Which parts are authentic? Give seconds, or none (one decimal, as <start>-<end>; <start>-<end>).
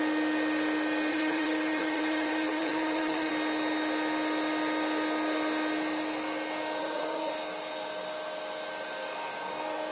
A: 0.0-1.1; 3.3-6.8; 7.3-9.9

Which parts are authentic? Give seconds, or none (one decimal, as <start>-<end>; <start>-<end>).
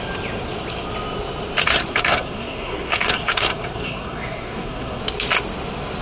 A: 0.0-1.9; 5.0-6.0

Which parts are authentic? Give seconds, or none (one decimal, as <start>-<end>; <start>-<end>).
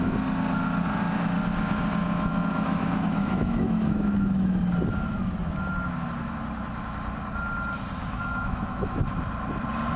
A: 0.0-2.3; 4.6-8.0; 9.0-10.0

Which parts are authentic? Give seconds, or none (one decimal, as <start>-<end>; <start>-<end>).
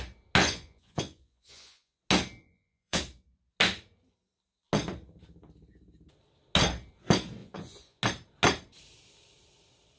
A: 0.0-0.4; 2.0-2.4; 3.0-7.4; 8.0-10.0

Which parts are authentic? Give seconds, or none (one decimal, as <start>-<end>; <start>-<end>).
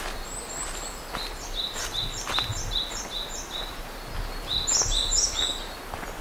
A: 0.0-6.2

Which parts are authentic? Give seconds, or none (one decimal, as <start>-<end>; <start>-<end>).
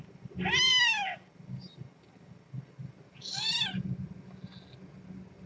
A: 0.0-5.5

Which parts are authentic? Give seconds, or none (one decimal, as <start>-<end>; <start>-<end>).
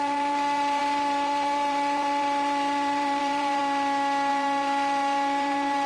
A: 3.6-4.3